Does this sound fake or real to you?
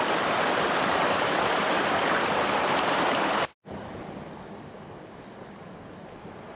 real